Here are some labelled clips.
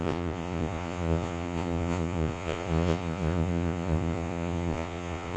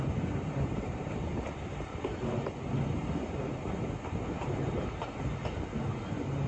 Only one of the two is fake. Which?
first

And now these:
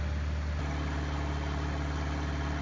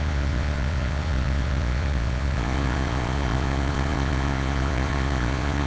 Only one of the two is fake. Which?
second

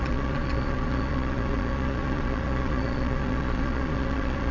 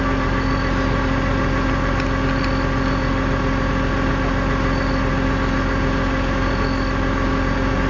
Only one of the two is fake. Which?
first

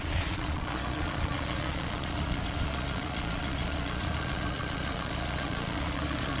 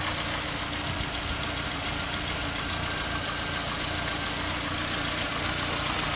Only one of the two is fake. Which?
first